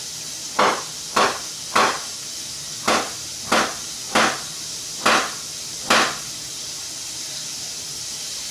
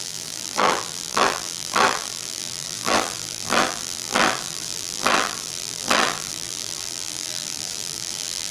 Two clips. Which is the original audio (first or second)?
first